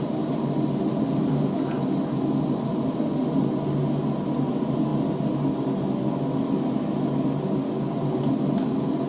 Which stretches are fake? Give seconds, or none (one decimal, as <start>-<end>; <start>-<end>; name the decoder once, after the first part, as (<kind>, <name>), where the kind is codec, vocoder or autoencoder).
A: none